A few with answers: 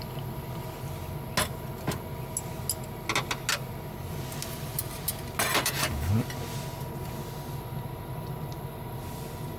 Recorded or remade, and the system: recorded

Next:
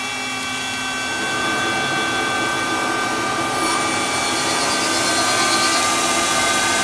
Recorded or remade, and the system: recorded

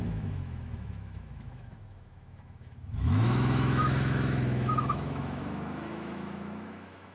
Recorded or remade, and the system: remade, autoencoder, DAC-VAE